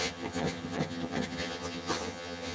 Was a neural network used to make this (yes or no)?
yes